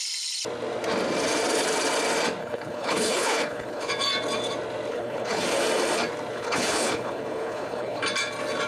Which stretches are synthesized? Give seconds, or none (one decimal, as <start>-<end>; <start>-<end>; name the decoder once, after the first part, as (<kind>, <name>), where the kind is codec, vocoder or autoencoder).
2.4-3.9 (codec, HILCodec); 4.9-5.4; 6.3-8.0